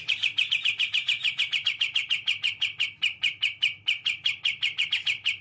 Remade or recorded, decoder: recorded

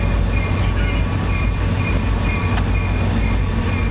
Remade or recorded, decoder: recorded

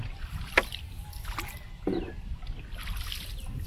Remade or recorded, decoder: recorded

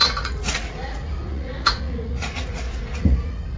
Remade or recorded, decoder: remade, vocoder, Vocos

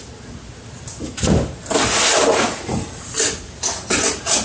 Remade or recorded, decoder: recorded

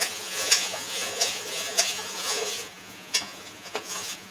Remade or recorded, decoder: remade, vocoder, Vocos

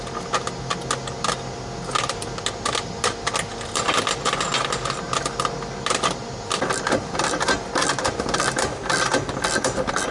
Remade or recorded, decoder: recorded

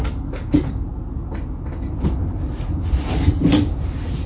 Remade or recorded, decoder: recorded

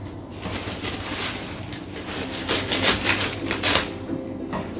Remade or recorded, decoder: recorded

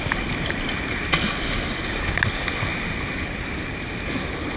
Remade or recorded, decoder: recorded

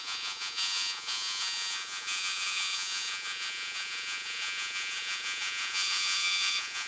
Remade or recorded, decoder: remade, vocoder, Vocos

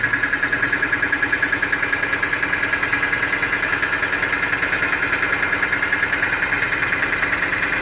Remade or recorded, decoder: recorded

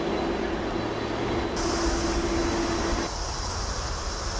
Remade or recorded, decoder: recorded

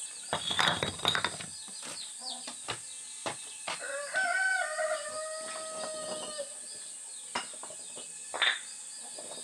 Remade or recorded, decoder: recorded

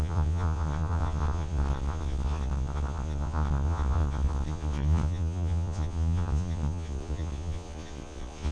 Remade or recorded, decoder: remade, vocoder, Vocos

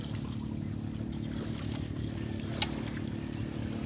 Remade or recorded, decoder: recorded